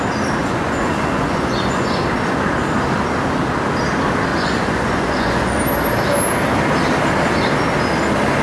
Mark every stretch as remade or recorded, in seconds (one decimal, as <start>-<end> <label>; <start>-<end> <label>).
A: 0.0-0.4 recorded; 0.4-1.9 remade; 1.9-4.3 recorded; 4.3-5.6 remade; 5.6-8.4 recorded